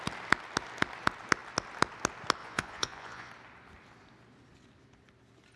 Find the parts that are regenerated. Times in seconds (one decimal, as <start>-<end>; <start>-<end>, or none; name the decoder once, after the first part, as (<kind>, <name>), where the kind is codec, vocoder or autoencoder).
2.4-3.3 (vocoder, Vocos)